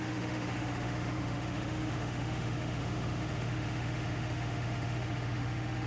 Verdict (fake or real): fake